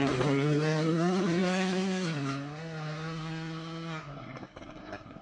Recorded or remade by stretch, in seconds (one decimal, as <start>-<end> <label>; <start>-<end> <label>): 0.0-5.2 remade

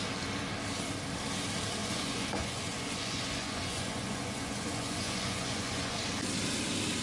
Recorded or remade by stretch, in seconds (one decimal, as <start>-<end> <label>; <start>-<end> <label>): 0.0-1.8 recorded; 1.8-6.0 remade; 6.0-7.0 recorded

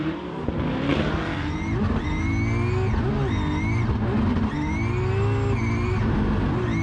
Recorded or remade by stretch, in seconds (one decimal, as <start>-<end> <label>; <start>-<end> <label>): 0.0-6.8 recorded

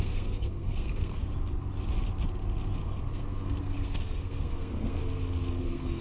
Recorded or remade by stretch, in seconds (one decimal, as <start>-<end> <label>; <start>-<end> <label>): 0.0-1.3 remade; 1.3-2.8 recorded; 2.8-5.0 remade; 5.0-5.6 recorded; 5.6-6.0 remade

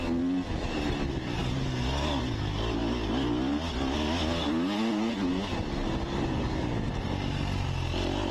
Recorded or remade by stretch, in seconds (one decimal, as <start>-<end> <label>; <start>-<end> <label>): 0.0-8.3 recorded

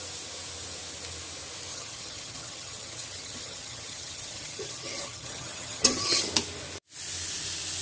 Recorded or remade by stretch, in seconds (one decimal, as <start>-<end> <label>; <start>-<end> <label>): 0.0-1.7 recorded; 1.7-6.2 remade; 6.2-7.8 recorded